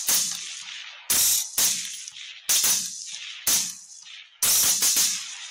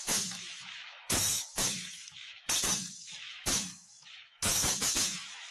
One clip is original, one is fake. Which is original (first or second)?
first